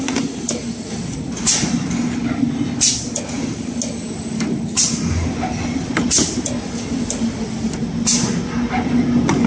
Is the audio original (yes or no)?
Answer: yes